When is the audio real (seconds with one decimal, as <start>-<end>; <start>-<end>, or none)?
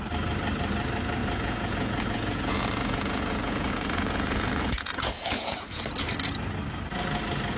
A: 0.0-1.2; 5.8-7.6